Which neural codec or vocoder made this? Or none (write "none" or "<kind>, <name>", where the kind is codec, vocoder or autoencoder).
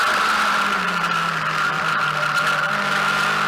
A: none